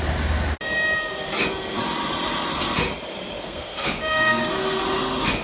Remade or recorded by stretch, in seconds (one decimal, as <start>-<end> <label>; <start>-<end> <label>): 0.0-3.4 recorded; 3.4-4.8 remade; 4.8-5.4 recorded